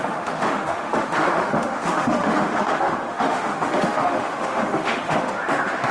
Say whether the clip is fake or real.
fake